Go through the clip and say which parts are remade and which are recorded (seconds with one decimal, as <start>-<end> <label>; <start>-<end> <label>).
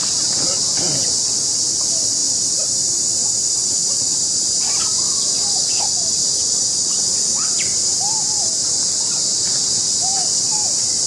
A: 0.0-2.2 recorded; 2.2-3.0 remade; 3.0-3.8 recorded; 3.8-4.6 remade; 4.6-11.1 recorded